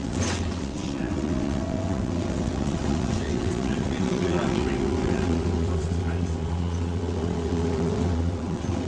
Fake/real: fake